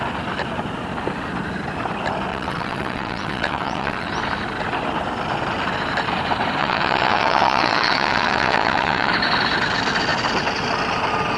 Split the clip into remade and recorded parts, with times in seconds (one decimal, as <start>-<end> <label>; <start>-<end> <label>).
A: 0.0-2.3 recorded; 2.3-4.1 remade; 4.1-6.6 recorded; 6.6-9.1 remade; 9.1-11.4 recorded